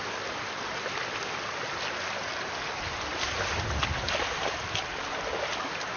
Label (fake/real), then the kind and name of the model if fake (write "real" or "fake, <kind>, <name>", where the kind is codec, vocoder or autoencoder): real